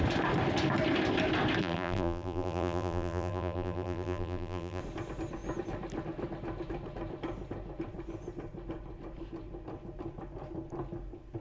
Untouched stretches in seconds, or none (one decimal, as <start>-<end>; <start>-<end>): 0.0-1.6; 4.8-11.4